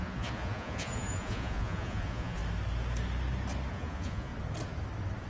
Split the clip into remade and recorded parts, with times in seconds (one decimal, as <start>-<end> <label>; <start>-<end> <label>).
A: 0.0-2.4 remade; 2.4-3.7 recorded; 3.7-4.3 remade; 4.3-5.3 recorded